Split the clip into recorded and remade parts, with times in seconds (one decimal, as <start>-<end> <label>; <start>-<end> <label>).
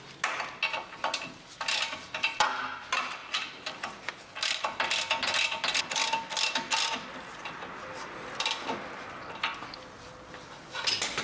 0.0-11.2 recorded